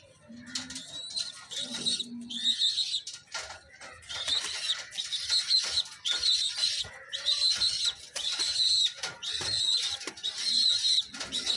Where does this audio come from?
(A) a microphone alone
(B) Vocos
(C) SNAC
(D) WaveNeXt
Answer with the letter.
A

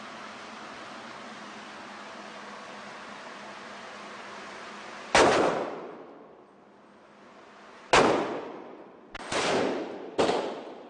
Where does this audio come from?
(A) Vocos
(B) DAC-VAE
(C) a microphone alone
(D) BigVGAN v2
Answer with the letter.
C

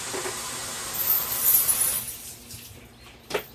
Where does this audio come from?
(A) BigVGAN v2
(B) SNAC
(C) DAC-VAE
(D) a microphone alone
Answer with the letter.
D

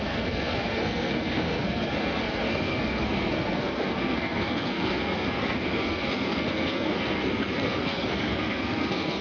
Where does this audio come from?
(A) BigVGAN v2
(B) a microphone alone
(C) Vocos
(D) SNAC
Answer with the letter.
D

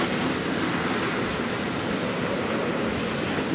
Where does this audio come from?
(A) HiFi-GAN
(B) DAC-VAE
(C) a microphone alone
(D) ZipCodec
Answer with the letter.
C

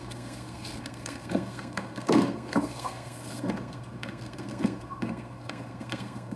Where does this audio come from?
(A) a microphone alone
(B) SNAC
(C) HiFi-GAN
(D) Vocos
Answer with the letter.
B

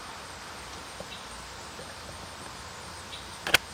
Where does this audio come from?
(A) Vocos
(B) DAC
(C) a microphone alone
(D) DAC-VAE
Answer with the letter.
C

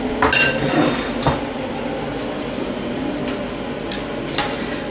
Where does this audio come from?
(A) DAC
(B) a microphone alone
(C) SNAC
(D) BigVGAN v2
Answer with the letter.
B